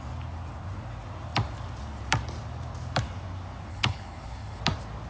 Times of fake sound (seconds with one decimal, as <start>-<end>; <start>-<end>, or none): 3.7-4.6